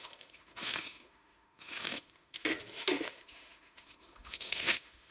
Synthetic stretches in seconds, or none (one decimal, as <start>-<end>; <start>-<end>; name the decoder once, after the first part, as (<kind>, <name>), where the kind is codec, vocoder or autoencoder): 0.0-5.1 (autoencoder, DAC-VAE)